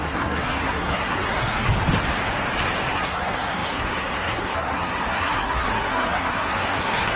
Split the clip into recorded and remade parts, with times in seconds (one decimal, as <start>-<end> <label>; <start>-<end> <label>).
0.0-1.7 remade; 1.7-2.9 recorded; 2.9-7.2 remade